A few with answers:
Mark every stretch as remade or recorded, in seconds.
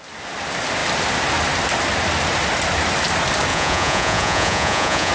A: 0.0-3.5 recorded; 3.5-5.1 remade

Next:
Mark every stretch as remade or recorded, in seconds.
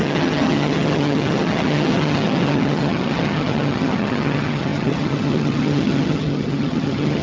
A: 0.0-7.2 remade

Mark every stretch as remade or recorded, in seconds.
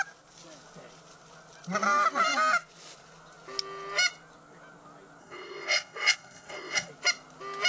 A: 0.0-5.2 recorded; 5.2-6.9 remade; 6.9-7.7 recorded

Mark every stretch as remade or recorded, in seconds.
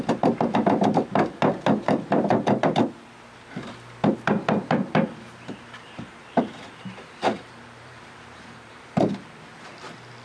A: 0.0-4.8 recorded; 4.8-9.1 remade; 9.1-10.2 recorded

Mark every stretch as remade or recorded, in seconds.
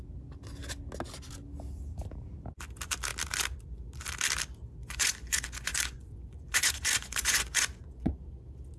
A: 0.0-4.8 recorded; 4.8-8.2 remade; 8.2-8.8 recorded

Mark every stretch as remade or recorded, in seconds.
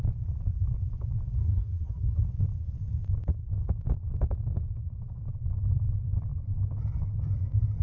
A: 0.0-1.4 recorded; 1.4-2.2 remade; 2.2-7.8 recorded